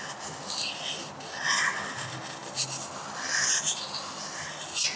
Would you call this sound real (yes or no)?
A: yes